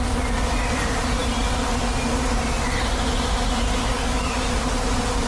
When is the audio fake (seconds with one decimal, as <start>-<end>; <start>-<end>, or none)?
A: 3.8-4.4